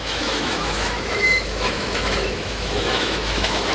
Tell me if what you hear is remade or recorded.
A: remade